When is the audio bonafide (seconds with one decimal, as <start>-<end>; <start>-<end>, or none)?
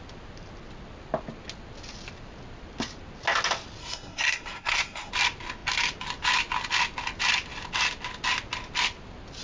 0.0-3.8; 5.1-9.4